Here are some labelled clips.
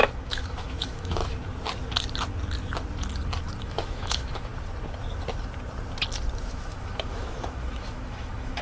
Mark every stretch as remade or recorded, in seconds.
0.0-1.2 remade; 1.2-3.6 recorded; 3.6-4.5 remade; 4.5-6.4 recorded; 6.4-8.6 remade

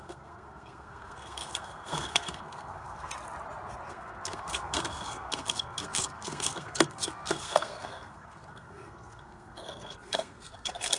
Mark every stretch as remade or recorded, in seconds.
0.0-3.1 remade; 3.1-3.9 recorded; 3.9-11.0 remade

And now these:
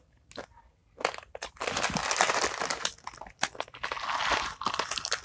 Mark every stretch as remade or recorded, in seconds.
0.0-5.2 recorded